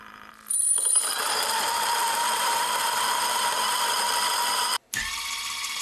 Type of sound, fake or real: fake